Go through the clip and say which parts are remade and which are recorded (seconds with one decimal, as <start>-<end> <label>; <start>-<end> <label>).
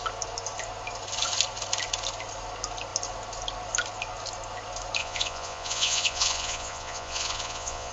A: 0.0-5.0 recorded; 5.0-7.9 remade